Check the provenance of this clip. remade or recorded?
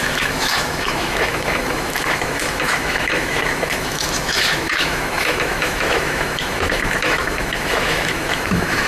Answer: remade